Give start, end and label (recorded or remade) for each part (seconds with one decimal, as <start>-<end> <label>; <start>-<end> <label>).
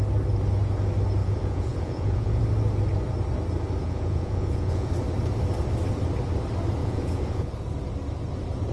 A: 0.0-1.2 recorded; 1.2-2.4 remade; 2.4-3.8 recorded; 3.8-4.9 remade; 4.9-6.8 recorded; 6.8-7.5 remade; 7.5-8.7 recorded